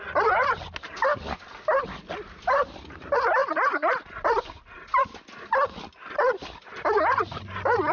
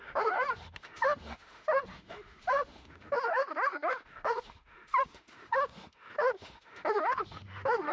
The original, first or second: first